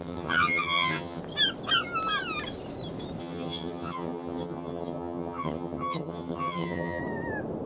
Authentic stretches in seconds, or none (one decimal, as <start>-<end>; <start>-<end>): 1.2-3.2; 7.0-7.7